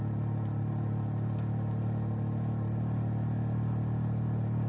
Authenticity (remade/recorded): recorded